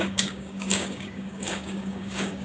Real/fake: fake